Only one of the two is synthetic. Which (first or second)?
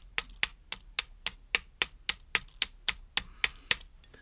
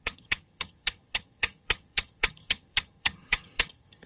second